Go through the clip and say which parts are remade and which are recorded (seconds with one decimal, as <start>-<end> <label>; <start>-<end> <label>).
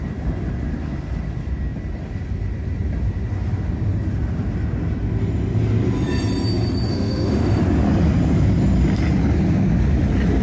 0.0-6.9 recorded; 6.9-7.6 remade; 7.6-10.4 recorded